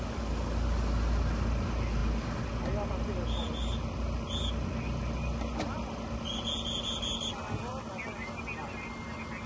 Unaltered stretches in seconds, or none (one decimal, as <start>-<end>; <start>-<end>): 0.0-9.5